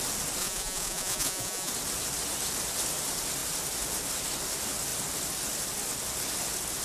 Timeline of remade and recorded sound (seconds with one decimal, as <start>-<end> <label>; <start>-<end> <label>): 0.0-0.4 recorded; 0.4-1.7 remade; 1.7-6.8 recorded